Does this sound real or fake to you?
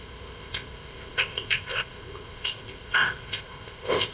fake